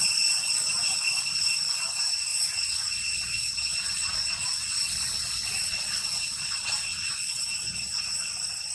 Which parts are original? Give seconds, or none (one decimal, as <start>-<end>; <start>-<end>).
0.0-2.3; 7.5-8.7